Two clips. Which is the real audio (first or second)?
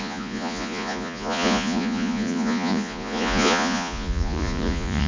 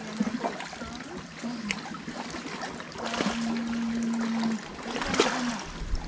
second